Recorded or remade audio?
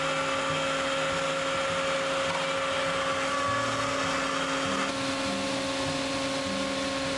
recorded